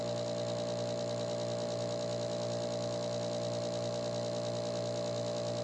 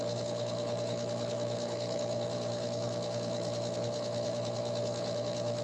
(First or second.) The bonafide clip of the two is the first